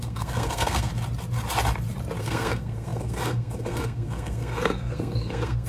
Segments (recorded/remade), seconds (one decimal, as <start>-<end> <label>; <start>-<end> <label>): 0.0-0.9 remade; 0.9-2.2 recorded; 2.2-5.7 remade